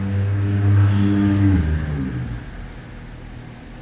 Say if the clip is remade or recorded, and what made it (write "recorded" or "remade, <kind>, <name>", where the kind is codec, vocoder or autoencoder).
recorded